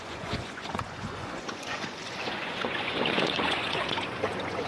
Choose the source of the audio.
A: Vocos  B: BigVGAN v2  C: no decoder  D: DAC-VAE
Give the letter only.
A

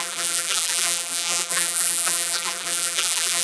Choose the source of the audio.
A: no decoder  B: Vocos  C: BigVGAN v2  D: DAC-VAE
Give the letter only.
C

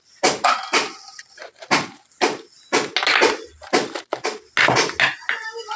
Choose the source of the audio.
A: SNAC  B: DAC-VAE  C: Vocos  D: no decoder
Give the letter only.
D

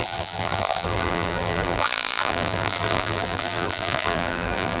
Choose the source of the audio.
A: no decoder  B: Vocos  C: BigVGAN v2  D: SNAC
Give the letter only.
C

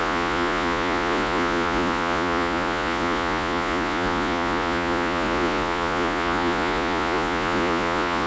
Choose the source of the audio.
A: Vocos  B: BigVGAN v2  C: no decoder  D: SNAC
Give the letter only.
A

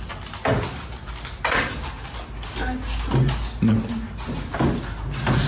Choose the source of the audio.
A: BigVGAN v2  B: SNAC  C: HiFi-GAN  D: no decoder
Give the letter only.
D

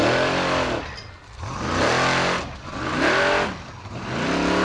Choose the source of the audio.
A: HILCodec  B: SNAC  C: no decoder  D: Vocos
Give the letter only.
C